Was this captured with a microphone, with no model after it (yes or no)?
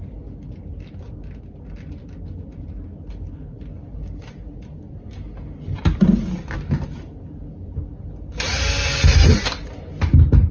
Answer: yes